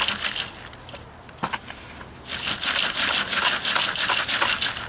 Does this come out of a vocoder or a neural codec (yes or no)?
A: no